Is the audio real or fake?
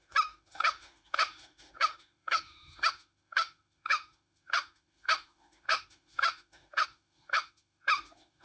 fake